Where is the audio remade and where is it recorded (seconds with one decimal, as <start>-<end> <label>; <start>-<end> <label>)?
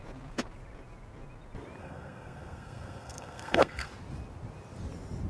0.0-1.8 recorded; 1.8-3.9 remade; 3.9-5.3 recorded